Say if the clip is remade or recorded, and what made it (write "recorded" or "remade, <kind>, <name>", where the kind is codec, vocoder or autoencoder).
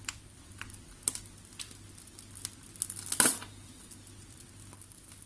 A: recorded